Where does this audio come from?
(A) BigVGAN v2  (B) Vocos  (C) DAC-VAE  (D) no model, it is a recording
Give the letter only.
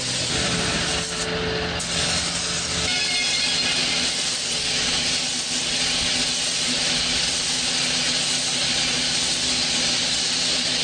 D